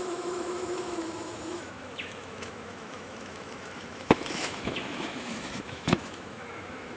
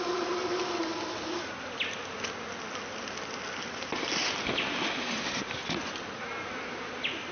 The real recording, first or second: second